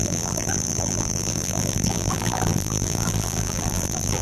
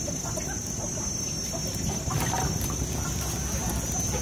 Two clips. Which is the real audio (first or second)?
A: second